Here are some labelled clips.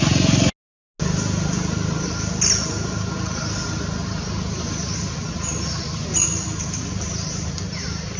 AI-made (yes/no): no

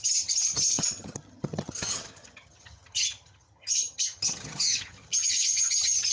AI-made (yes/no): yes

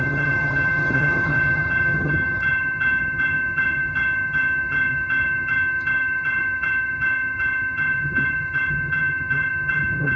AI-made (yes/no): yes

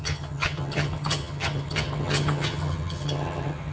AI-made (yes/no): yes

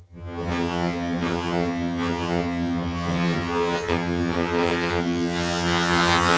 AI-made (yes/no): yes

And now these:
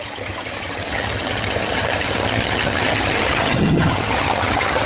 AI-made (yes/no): yes